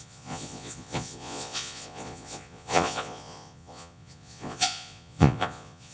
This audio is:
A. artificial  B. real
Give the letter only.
A